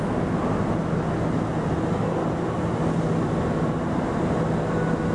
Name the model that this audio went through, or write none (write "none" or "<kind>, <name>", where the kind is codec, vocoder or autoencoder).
none